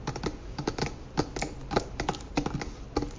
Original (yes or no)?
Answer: yes